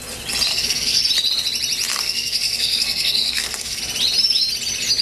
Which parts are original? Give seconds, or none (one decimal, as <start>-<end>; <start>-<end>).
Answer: 0.0-0.5; 1.0-1.9; 3.8-5.0